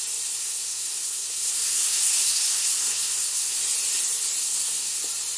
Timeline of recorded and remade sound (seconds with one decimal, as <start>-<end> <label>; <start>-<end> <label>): 0.0-0.4 recorded; 0.4-3.6 remade; 3.6-4.4 recorded; 4.4-5.0 remade; 5.0-5.4 recorded